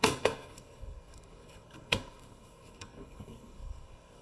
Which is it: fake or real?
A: fake